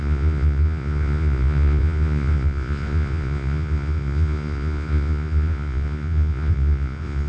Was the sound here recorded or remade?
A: remade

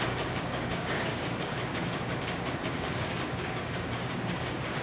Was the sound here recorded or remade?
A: remade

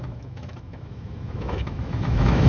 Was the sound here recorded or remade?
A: remade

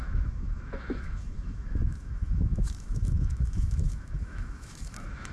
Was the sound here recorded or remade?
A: remade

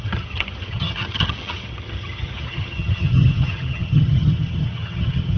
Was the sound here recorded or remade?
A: remade